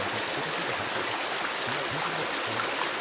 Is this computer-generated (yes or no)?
no